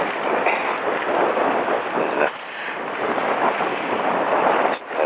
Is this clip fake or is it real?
real